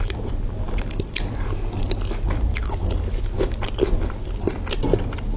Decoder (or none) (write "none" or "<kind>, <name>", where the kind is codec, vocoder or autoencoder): none